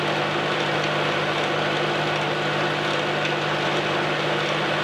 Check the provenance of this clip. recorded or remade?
recorded